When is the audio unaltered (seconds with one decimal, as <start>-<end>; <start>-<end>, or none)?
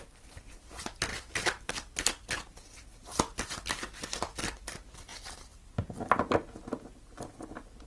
0.0-1.1; 1.7-5.1; 6.0-7.9